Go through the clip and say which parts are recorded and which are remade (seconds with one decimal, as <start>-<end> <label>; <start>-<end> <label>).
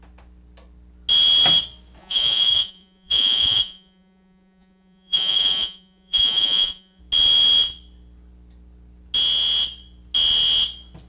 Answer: 0.0-2.0 recorded; 2.0-7.0 remade; 7.0-11.1 recorded